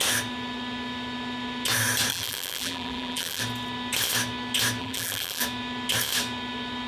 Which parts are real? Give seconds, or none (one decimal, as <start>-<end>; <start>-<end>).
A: 0.0-2.1; 3.4-4.8; 5.4-6.9